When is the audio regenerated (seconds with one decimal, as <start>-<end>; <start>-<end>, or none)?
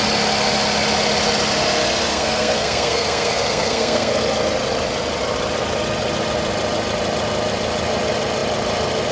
2.1-4.1